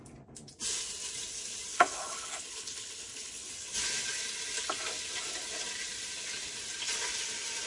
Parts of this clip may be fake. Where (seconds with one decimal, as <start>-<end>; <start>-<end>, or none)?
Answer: 1.7-3.5